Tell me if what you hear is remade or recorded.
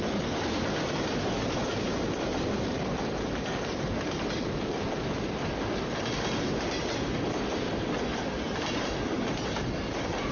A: recorded